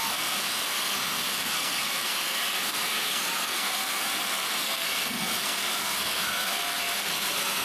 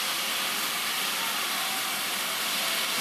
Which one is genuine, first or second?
second